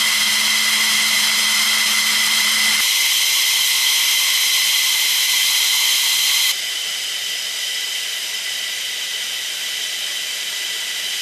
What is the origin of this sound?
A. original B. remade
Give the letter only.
A